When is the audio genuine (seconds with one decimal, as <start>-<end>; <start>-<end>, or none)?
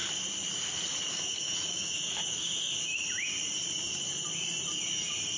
0.0-1.1; 2.9-5.4